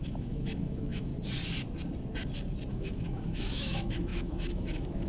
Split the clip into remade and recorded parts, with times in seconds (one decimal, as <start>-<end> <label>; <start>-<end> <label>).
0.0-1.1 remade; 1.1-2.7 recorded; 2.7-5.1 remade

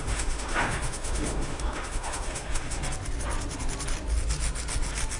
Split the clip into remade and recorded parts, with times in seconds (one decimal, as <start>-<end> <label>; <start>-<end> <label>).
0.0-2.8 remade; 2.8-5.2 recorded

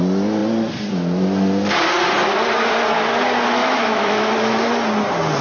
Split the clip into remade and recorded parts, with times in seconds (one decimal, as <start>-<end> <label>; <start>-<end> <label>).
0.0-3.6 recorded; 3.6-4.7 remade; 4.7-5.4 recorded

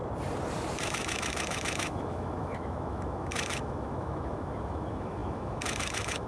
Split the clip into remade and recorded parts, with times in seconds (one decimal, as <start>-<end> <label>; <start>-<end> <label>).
0.0-0.8 recorded; 0.8-6.3 remade